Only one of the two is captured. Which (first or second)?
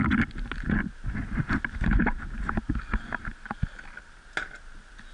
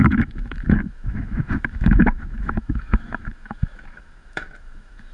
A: first